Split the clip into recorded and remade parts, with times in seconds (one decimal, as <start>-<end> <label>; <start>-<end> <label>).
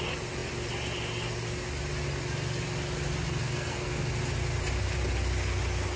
0.0-3.4 recorded; 3.4-4.1 remade; 4.1-6.0 recorded